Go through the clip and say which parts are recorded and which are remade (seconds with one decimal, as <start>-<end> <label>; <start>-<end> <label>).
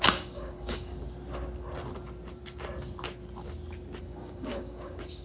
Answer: 0.0-0.9 remade; 0.9-4.0 recorded; 4.0-5.2 remade